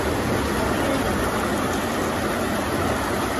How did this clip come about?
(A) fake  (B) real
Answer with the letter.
B